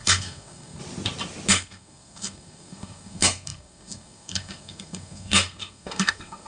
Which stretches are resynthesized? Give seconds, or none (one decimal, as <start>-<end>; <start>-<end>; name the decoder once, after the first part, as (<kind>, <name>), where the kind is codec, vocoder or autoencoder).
0.0-0.8 (codec, SNAC); 1.5-6.5

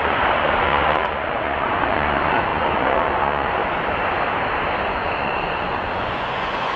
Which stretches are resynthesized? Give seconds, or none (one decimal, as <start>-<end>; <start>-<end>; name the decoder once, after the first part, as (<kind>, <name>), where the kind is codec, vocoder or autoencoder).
0.0-3.6 (vocoder, Vocos); 4.9-6.8

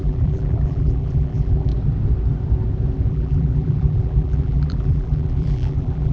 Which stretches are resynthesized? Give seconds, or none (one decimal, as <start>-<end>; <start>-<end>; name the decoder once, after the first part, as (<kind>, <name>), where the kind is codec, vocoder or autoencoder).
0.0-1.7 (vocoder, BigVGAN v2); 3.1-6.1